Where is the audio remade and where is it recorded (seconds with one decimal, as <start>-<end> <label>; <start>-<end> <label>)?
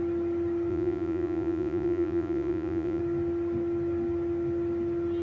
0.0-0.7 recorded; 0.7-3.0 remade; 3.0-5.2 recorded